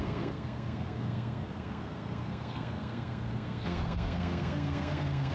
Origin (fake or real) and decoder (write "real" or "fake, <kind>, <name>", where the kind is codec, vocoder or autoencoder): fake, codec, SNAC